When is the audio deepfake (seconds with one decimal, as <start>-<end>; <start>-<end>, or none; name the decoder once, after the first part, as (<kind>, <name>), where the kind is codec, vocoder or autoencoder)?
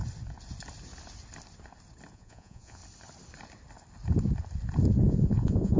2.1-2.8 (vocoder, Vocos); 5.0-5.8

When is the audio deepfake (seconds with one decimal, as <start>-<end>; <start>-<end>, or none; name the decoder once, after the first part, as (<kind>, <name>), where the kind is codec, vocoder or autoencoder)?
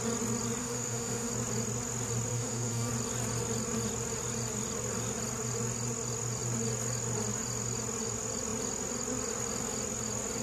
0.6-1.3 (autoencoder, DAC-VAE); 2.3-2.9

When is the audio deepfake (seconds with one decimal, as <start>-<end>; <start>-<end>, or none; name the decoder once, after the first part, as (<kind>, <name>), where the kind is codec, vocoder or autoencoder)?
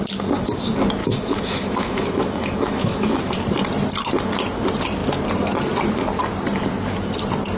1.0-3.3 (autoencoder, DAC-VAE)